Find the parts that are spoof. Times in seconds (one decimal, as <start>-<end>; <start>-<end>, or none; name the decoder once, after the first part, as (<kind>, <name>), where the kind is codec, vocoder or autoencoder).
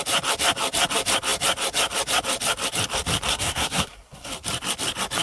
3.3-4.3 (codec, SNAC)